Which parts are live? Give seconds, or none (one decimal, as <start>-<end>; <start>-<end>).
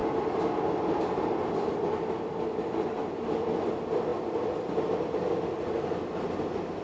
0.0-6.8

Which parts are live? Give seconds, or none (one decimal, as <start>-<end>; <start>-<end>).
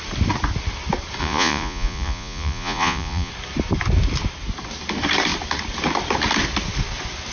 0.0-1.2; 3.3-7.3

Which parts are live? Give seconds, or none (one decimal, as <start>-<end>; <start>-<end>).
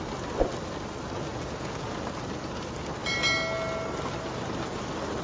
0.0-1.3; 1.9-5.2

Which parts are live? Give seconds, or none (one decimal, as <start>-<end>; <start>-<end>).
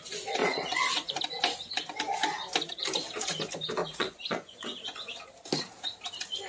0.0-0.4; 1.2-3.8; 5.1-6.5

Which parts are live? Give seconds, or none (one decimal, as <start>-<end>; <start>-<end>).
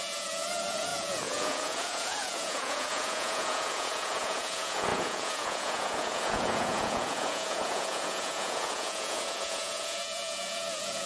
none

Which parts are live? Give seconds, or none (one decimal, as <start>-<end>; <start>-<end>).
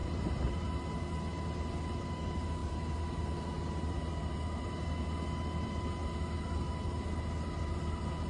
0.0-8.3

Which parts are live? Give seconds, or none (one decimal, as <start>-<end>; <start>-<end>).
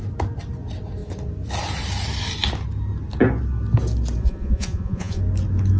0.0-4.2; 5.2-5.8